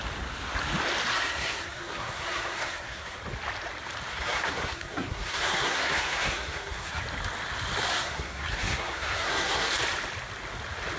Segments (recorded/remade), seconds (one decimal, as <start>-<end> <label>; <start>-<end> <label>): 0.0-1.1 recorded; 1.1-3.2 remade; 3.2-4.1 recorded; 4.1-7.0 remade; 7.0-7.9 recorded; 7.9-9.7 remade; 9.7-11.0 recorded